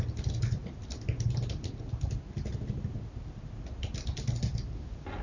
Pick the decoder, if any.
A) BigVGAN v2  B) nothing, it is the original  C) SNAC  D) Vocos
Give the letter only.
B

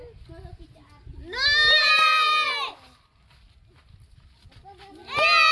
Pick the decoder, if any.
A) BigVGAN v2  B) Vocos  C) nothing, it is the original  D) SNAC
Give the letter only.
C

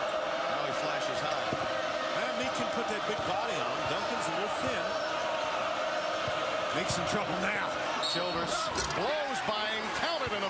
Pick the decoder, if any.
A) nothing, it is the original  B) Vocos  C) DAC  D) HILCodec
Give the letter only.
A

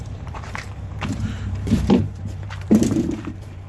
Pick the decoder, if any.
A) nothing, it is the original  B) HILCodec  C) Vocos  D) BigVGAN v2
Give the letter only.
D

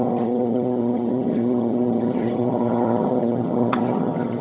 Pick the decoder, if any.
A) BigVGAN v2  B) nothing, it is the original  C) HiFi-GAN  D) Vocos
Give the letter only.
C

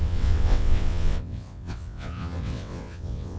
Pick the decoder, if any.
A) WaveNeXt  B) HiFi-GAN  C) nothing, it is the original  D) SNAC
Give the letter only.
A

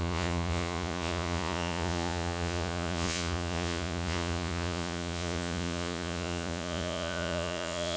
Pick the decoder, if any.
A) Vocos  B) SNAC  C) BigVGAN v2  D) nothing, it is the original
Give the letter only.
A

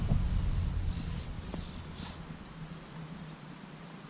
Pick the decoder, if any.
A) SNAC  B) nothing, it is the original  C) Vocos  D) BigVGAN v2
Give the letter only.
B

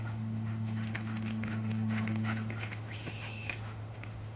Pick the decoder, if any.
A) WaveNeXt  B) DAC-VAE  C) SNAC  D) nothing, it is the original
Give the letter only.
B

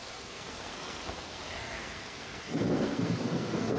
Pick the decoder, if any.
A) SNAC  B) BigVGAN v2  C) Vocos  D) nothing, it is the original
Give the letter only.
A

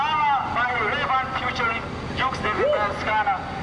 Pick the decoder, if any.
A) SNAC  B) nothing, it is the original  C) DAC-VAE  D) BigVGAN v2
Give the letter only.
B